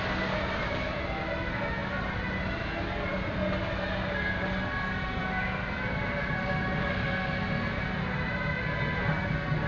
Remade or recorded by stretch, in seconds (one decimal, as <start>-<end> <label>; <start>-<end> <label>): 0.0-9.7 recorded